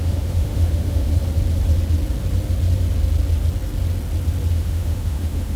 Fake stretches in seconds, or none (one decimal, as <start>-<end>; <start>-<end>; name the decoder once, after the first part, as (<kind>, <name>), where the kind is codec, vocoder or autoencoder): 0.0-1.1 (autoencoder, DAC-VAE); 4.5-5.6